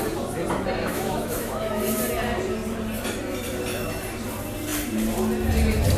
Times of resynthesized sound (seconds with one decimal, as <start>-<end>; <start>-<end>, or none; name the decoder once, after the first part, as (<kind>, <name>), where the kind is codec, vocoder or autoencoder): 0.8-1.8 (autoencoder, DAC-VAE)